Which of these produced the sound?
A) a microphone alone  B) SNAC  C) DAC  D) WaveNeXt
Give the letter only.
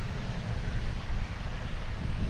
A